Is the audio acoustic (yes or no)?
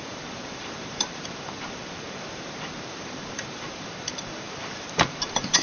no